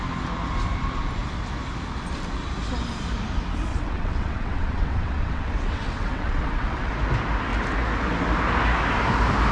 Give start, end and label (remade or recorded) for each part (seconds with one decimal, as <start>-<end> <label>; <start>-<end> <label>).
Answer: 0.0-3.7 recorded; 3.7-6.9 remade; 6.9-9.5 recorded